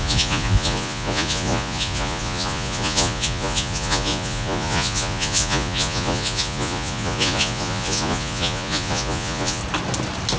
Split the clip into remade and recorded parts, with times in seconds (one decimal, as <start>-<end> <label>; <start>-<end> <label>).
0.0-9.6 remade; 9.6-10.4 recorded